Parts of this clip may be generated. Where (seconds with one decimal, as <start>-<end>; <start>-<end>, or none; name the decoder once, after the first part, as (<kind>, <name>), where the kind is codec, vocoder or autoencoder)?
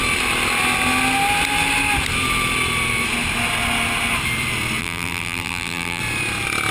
4.8-6.0 (vocoder, BigVGAN v2)